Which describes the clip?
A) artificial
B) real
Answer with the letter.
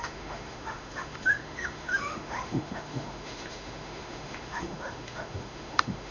A